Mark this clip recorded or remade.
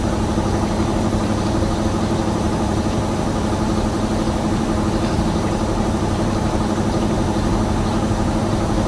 recorded